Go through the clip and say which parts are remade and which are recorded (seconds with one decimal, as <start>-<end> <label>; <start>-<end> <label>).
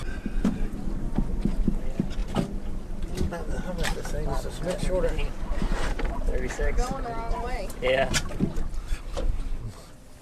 0.0-10.2 recorded